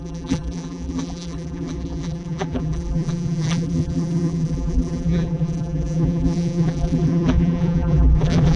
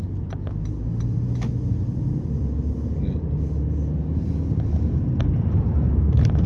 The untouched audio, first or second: second